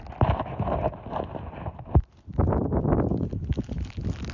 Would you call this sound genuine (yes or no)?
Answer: yes